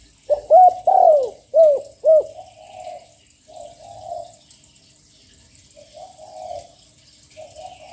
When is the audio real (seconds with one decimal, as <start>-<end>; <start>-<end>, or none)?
0.0-7.9